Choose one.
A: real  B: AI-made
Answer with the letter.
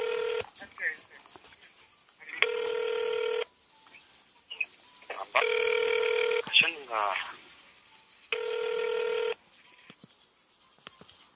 A